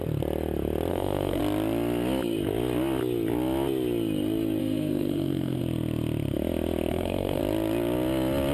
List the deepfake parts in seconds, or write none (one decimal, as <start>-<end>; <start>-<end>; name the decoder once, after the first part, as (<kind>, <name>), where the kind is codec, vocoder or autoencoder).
0.9-1.4 (codec, SNAC); 4.6-5.6; 6.9-7.4